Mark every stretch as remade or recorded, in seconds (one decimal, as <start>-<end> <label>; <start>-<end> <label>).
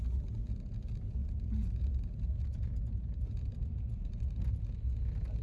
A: 0.0-1.2 recorded; 1.2-4.4 remade; 4.4-5.4 recorded